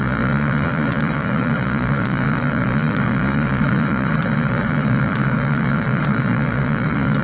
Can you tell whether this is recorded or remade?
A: remade